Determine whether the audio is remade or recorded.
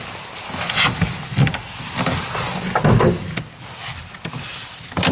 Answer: recorded